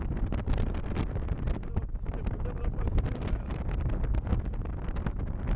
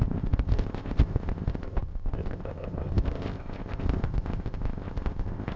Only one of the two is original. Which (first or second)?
first